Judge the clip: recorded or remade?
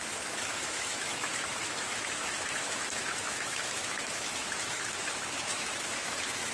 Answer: remade